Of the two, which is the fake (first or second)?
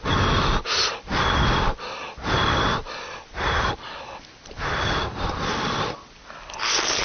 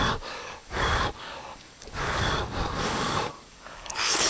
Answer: second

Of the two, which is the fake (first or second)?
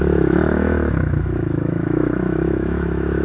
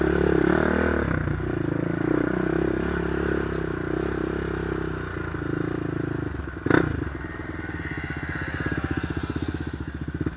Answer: first